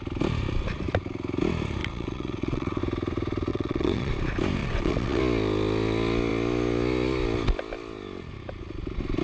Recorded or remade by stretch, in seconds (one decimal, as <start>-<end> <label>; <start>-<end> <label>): 0.0-1.8 recorded; 1.8-2.8 remade; 2.8-3.5 recorded; 3.5-4.1 remade; 4.1-4.6 recorded; 4.6-5.2 remade; 5.2-9.2 recorded